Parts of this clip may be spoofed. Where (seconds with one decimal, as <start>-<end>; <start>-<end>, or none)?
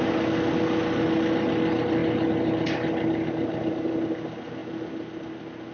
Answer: none